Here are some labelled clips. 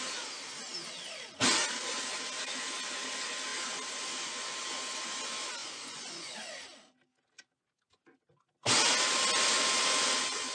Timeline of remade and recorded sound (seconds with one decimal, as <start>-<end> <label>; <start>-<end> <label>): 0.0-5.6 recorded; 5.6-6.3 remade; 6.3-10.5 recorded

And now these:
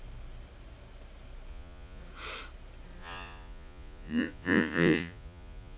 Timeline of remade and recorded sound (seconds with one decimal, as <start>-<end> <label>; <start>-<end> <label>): 0.0-1.5 recorded; 1.5-2.0 remade; 2.0-3.0 recorded; 3.0-5.8 remade

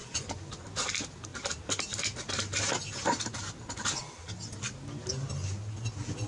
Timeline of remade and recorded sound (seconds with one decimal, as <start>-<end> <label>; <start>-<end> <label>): 0.0-0.6 remade; 0.6-6.3 recorded

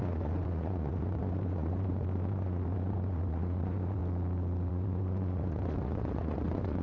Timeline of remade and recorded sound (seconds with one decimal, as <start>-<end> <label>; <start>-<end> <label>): 0.0-4.0 remade; 4.0-4.7 recorded; 4.7-6.8 remade

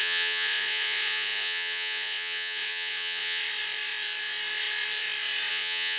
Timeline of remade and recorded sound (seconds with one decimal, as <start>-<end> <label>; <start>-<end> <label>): 0.0-3.4 remade; 3.4-5.5 recorded; 5.5-6.0 remade

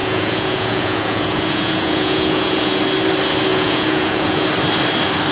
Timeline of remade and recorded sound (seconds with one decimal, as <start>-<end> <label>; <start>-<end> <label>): 0.0-2.8 remade; 2.8-3.5 recorded; 3.5-4.5 remade; 4.5-5.3 recorded

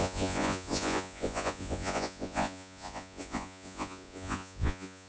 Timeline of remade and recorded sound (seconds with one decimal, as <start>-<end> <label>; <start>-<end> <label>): 0.0-5.1 remade